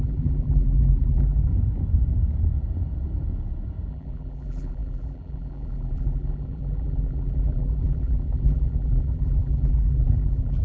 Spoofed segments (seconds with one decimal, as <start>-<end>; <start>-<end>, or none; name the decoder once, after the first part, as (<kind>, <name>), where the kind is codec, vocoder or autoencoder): 0.0-1.5 (vocoder, BigVGAN v2); 3.9-10.6